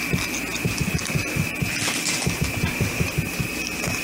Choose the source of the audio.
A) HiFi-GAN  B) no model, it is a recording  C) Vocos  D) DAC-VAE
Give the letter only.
B